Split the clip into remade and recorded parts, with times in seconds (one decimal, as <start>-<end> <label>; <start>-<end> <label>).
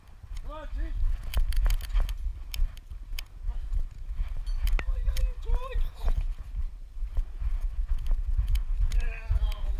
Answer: 0.0-9.8 recorded